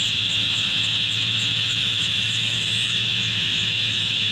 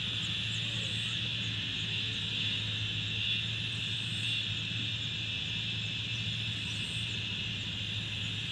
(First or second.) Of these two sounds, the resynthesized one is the first